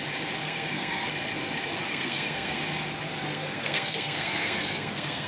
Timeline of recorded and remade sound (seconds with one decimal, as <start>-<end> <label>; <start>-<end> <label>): 0.0-0.4 recorded; 0.4-1.1 remade; 1.1-1.9 recorded; 1.9-2.6 remade; 2.6-3.3 recorded; 3.3-5.3 remade